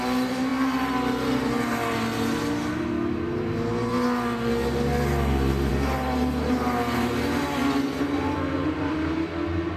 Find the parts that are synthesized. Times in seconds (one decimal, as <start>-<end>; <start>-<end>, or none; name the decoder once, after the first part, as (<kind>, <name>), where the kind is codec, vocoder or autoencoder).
none